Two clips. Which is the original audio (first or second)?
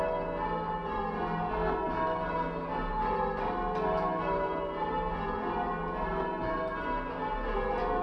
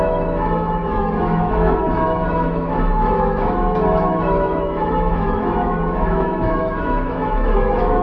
first